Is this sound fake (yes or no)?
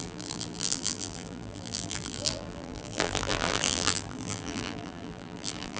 yes